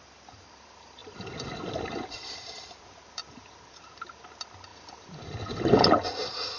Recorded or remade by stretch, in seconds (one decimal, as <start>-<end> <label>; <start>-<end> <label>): 0.0-4.7 remade; 4.7-5.8 recorded; 5.8-6.6 remade